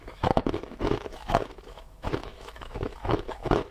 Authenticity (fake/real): fake